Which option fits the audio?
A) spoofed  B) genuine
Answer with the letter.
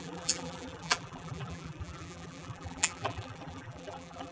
A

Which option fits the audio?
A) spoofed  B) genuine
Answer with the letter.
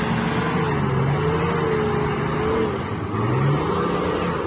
B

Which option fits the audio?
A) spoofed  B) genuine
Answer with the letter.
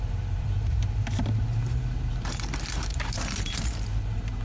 A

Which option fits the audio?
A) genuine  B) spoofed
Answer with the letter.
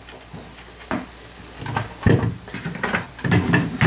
A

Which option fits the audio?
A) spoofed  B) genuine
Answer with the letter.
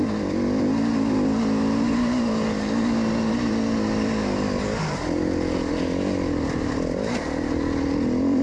B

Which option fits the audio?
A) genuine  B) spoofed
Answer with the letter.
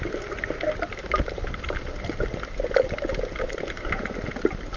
A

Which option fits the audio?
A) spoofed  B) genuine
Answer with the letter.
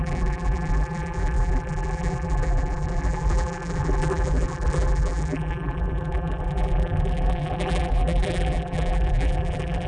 A